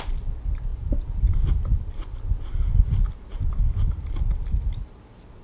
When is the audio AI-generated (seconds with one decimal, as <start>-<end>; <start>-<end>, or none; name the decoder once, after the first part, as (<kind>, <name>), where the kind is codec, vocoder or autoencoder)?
none